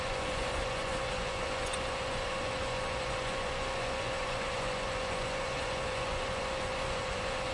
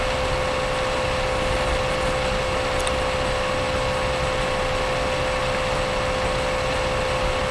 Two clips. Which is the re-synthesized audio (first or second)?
first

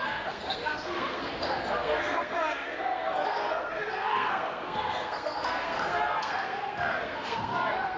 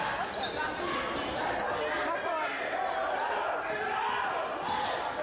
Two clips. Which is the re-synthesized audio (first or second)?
first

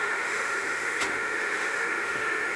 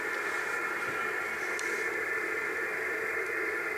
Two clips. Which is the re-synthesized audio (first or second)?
first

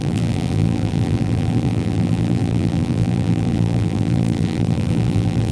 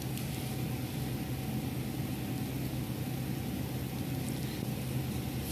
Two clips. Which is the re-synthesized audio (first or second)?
first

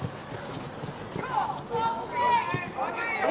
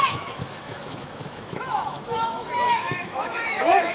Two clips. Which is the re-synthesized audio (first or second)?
second